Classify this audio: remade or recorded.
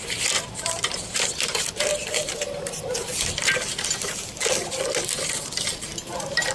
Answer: recorded